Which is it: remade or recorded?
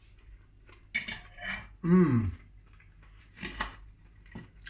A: recorded